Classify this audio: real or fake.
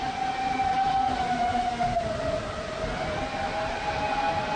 real